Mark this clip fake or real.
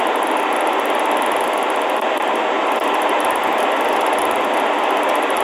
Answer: real